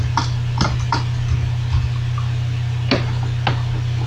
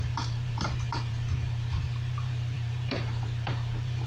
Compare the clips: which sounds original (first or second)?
first